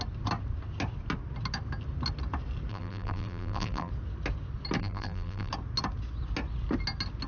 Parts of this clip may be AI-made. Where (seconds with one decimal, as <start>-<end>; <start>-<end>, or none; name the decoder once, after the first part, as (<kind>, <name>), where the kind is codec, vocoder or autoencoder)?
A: 2.7-3.9 (vocoder, BigVGAN v2); 4.8-5.5